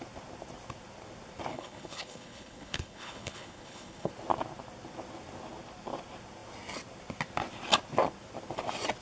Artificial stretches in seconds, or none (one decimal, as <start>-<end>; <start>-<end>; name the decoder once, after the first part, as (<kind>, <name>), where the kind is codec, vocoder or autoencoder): 1.5-4.1 (codec, HILCodec)